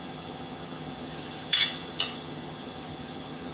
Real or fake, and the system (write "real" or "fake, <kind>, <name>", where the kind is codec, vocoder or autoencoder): fake, vocoder, HiFi-GAN